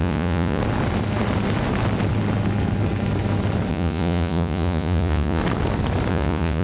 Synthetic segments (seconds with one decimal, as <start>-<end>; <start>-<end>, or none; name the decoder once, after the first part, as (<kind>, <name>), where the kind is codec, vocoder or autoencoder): 0.0-0.6 (vocoder, Vocos); 3.7-5.4; 6.1-6.6